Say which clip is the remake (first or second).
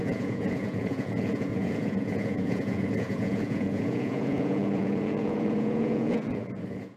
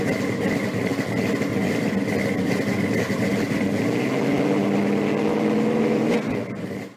first